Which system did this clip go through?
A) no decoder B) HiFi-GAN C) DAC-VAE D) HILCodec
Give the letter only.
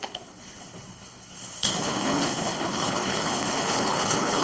D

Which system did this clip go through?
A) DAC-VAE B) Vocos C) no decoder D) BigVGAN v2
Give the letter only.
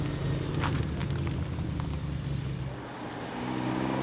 C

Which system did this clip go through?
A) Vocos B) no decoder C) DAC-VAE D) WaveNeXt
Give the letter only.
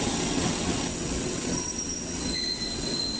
D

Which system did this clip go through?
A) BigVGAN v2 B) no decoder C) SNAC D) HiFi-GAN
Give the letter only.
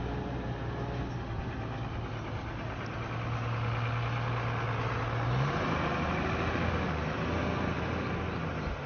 B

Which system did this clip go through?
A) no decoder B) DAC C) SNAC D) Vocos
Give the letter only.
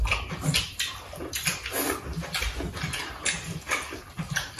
A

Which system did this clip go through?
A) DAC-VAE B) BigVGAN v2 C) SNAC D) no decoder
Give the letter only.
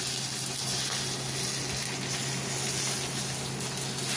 D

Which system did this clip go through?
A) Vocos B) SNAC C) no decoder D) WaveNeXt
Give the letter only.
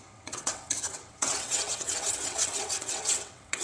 D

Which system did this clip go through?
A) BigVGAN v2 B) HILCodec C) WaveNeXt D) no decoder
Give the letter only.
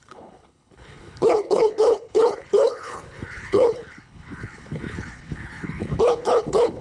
B